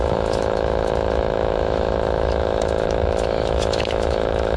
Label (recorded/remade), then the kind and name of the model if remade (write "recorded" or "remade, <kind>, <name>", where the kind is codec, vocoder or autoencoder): remade, autoencoder, DAC-VAE